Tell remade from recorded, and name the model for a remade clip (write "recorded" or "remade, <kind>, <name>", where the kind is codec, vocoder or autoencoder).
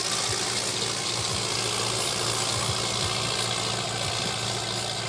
recorded